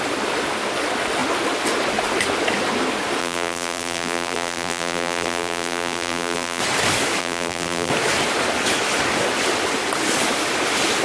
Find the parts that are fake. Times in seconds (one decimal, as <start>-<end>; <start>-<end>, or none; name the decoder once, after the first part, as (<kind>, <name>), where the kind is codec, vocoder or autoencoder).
3.2-6.6 (vocoder, BigVGAN v2); 7.2-7.9